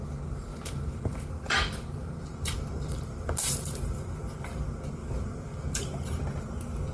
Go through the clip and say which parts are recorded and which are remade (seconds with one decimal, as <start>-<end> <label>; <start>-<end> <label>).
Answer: 0.0-0.5 recorded; 0.5-4.6 remade; 4.6-5.0 recorded; 5.0-6.2 remade; 6.2-6.9 recorded